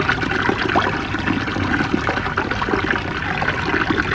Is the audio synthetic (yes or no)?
no